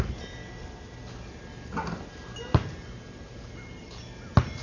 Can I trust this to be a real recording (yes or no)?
yes